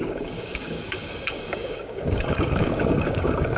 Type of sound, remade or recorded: remade